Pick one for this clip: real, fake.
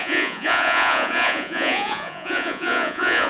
fake